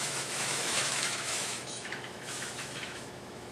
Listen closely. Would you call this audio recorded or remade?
remade